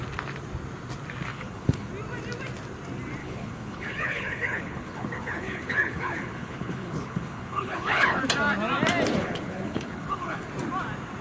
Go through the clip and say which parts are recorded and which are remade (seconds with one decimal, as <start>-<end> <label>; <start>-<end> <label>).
0.0-1.3 recorded; 1.3-1.9 remade; 1.9-3.2 recorded; 3.2-8.2 remade; 8.2-9.2 recorded; 9.2-10.5 remade; 10.5-11.2 recorded